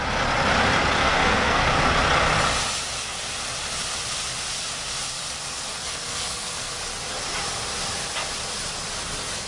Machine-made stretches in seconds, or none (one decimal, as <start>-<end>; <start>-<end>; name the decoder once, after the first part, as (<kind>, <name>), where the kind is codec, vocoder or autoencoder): 1.0-1.6 (codec, SNAC); 5.8-6.7